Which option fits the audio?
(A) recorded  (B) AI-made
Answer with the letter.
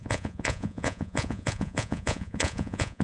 B